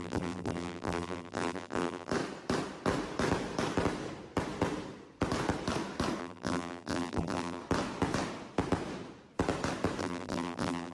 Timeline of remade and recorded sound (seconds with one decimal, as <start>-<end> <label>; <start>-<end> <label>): 0.0-2.1 remade; 2.1-6.2 recorded; 6.2-7.6 remade; 7.6-10.0 recorded; 10.0-10.9 remade